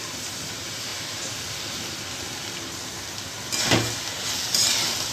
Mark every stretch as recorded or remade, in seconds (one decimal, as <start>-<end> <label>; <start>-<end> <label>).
0.0-5.1 recorded